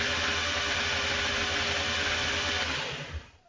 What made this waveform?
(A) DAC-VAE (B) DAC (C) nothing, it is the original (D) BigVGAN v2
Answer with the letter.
C